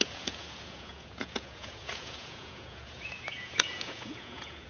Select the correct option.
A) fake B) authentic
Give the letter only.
A